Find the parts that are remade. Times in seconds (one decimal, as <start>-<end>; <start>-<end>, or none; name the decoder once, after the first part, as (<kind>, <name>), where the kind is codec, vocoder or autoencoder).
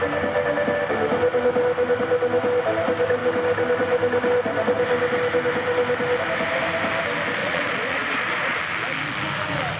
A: 7.4-8.6 (vocoder, Vocos)